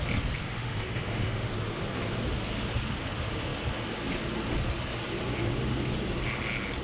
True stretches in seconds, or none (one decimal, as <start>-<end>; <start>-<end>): 0.0-0.4; 1.5-6.8